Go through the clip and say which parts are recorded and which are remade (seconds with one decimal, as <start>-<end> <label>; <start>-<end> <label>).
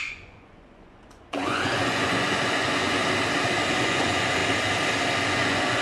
0.0-3.0 remade; 3.0-3.8 recorded; 3.8-4.4 remade; 4.4-5.3 recorded; 5.3-5.8 remade